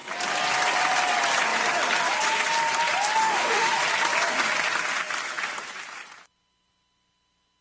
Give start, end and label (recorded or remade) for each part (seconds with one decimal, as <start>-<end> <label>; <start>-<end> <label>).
0.0-3.2 recorded; 3.2-3.7 remade; 3.7-7.6 recorded